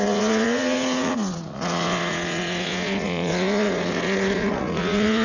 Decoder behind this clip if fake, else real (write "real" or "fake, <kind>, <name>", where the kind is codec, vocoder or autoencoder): fake, vocoder, Vocos